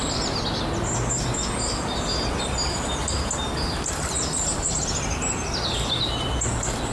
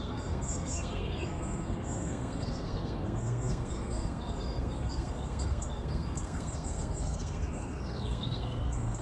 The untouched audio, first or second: first